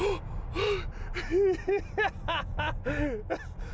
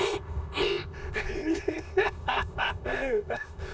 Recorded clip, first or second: first